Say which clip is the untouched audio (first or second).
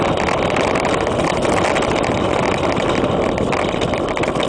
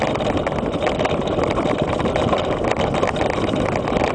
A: second